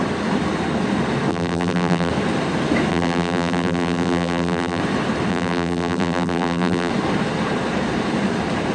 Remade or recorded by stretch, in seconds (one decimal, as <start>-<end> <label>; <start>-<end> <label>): 0.0-1.3 recorded; 1.3-2.1 remade; 2.1-2.9 recorded; 2.9-4.8 remade; 4.8-5.3 recorded; 5.3-6.9 remade; 6.9-8.7 recorded